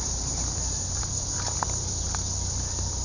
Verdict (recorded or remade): recorded